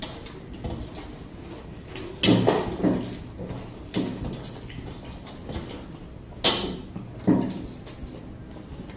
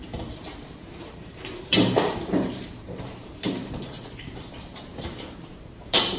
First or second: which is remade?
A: second